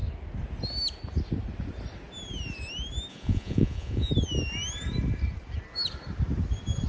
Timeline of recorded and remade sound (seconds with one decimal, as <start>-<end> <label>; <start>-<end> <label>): 0.0-3.1 recorded; 3.1-4.1 remade; 4.1-6.9 recorded